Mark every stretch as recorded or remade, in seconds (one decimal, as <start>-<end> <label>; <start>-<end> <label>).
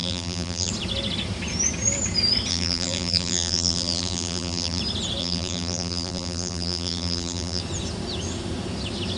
0.0-0.7 remade; 0.7-2.5 recorded; 2.5-4.8 remade; 4.8-5.2 recorded; 5.2-7.6 remade; 7.6-9.2 recorded